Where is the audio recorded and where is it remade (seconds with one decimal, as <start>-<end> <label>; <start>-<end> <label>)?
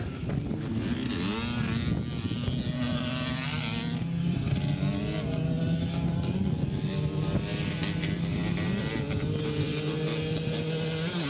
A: 0.0-11.3 recorded